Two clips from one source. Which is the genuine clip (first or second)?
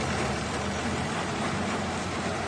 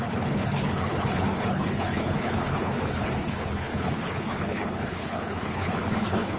first